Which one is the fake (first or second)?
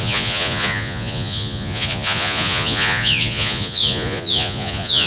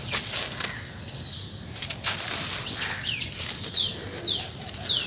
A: first